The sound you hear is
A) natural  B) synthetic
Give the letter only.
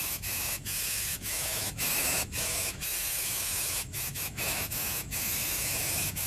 B